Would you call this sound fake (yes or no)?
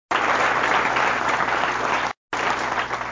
no